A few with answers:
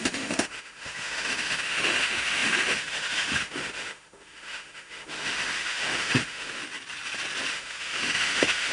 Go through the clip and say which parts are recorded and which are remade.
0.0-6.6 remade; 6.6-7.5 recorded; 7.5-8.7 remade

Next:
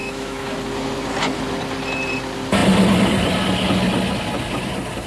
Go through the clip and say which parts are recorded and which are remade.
0.0-0.5 remade; 0.5-5.1 recorded

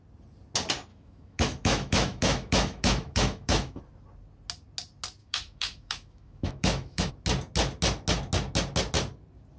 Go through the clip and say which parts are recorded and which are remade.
0.0-0.9 recorded; 0.9-3.8 remade; 3.8-5.2 recorded; 5.2-7.1 remade; 7.1-9.6 recorded

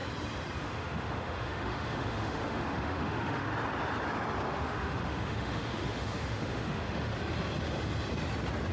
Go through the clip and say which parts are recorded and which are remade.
0.0-0.6 recorded; 0.6-3.5 remade; 3.5-4.5 recorded; 4.5-7.1 remade; 7.1-8.7 recorded

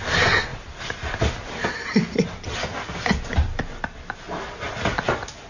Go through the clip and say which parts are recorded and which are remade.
0.0-5.5 recorded

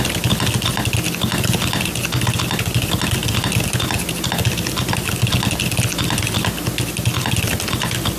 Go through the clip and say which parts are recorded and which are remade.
0.0-8.2 recorded

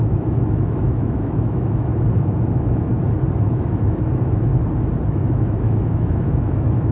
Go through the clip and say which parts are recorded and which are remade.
0.0-1.9 remade; 1.9-2.5 recorded; 2.5-2.9 remade; 2.9-3.5 recorded; 3.5-4.5 remade; 4.5-5.1 recorded; 5.1-6.9 remade

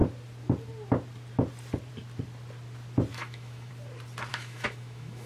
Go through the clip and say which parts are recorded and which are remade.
0.0-3.1 recorded; 3.1-3.7 remade; 3.7-4.3 recorded; 4.3-5.3 remade